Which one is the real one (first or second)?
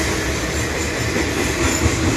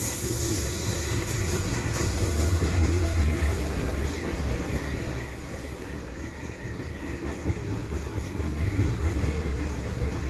first